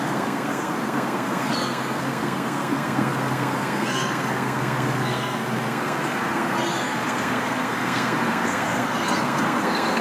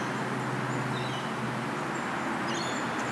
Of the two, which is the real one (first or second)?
second